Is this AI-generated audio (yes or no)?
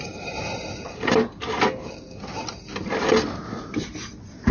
no